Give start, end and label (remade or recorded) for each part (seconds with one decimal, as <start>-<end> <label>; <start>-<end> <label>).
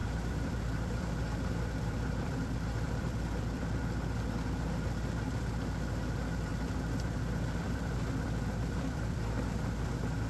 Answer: 0.0-3.8 remade; 3.8-6.5 recorded; 6.5-9.6 remade; 9.6-10.3 recorded